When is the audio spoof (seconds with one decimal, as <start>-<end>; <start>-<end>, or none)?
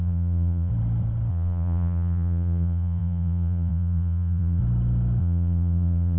0.0-0.7; 1.3-4.6; 5.2-6.2